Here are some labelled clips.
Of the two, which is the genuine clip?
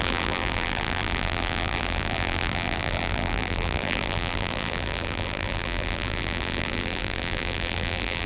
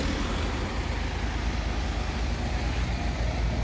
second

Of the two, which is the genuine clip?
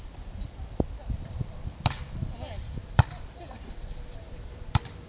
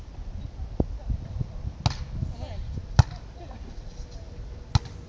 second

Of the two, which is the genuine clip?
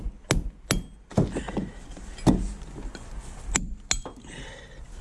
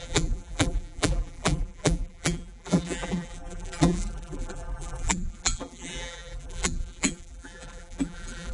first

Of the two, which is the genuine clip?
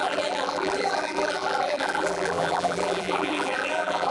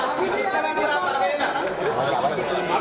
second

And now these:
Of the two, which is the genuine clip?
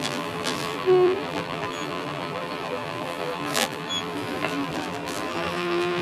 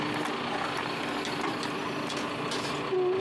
second